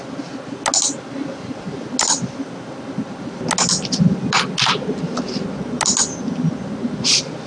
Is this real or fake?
real